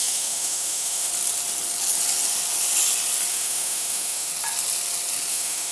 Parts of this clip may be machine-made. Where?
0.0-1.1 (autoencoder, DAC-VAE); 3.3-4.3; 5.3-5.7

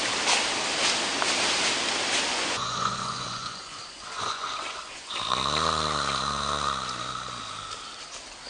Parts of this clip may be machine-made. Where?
2.3-5.1 (vocoder, Vocos)

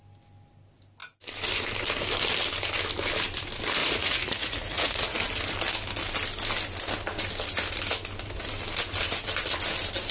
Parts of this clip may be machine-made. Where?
3.8-5.2 (vocoder, Vocos)

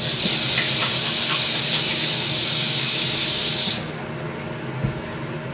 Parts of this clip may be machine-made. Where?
0.8-3.9 (codec, DAC)

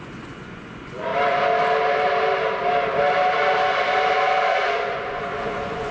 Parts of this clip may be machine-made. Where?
0.0-1.1 (vocoder, Vocos); 4.6-5.9

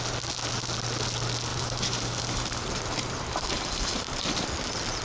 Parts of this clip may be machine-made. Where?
1.5-4.5 (vocoder, BigVGAN v2)

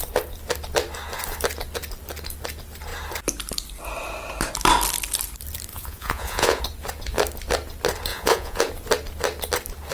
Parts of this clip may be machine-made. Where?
5.7-6.6 (vocoder, Vocos); 8.1-8.7

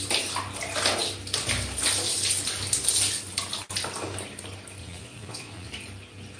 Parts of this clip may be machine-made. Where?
4.8-5.7 (vocoder, Vocos)